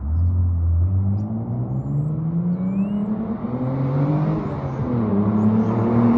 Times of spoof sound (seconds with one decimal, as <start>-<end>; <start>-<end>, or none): 3.0-4.1; 5.1-6.2